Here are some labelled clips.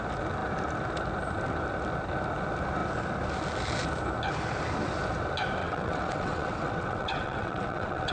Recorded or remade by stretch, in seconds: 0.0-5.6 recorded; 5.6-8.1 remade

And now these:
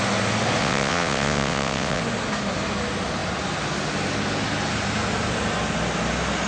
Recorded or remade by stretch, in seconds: 0.0-0.6 recorded; 0.6-2.0 remade; 2.0-6.5 recorded

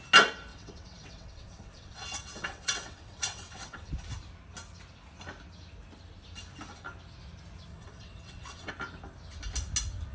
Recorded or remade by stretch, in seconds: 0.0-0.5 recorded; 0.5-3.9 remade; 3.9-7.7 recorded; 7.7-8.7 remade; 8.7-10.1 recorded

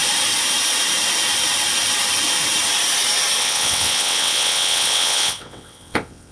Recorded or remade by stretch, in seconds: 0.0-3.4 recorded; 3.4-6.3 remade

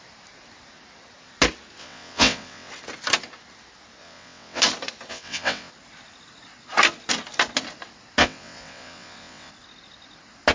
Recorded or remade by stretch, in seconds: 0.0-1.8 recorded; 1.8-2.7 remade; 2.7-4.0 recorded; 4.0-4.6 remade; 4.6-5.1 recorded; 5.1-5.7 remade; 5.7-8.2 recorded; 8.2-9.5 remade; 9.5-10.5 recorded

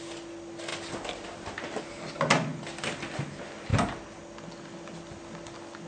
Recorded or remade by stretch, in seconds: 0.0-5.9 recorded